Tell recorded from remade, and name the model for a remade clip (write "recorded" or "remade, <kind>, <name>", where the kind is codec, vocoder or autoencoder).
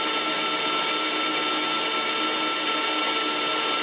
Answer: recorded